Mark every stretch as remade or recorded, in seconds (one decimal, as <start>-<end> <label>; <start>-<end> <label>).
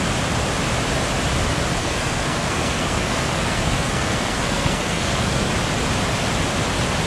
0.0-1.8 recorded; 1.8-5.5 remade; 5.5-7.1 recorded